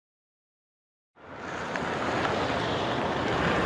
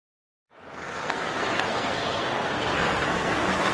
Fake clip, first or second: second